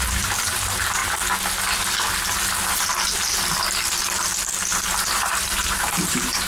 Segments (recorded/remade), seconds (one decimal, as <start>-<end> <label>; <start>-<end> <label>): 0.0-1.0 remade; 1.0-4.9 recorded; 4.9-6.5 remade